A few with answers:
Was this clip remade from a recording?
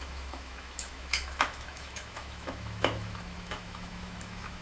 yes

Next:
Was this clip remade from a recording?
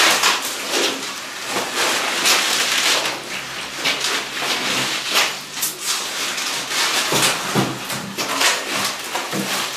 no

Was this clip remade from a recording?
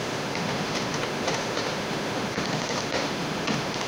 yes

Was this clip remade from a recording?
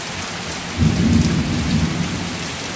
no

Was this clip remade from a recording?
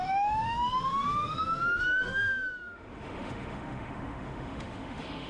yes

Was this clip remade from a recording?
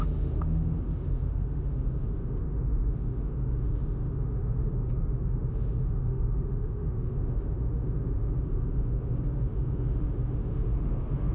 yes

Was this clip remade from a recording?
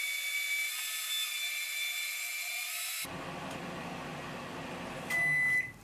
no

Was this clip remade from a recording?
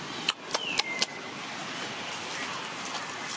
no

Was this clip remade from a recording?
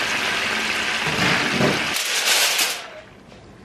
no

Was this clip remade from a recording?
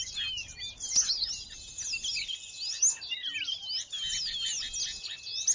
no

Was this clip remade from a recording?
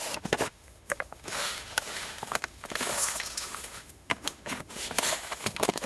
yes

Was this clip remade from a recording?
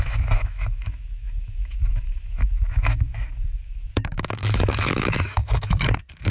yes